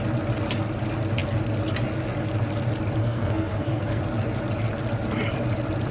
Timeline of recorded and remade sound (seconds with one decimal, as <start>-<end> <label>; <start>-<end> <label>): 0.0-3.0 recorded; 3.0-4.0 remade; 4.0-5.9 recorded